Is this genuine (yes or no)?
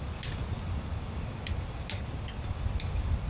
yes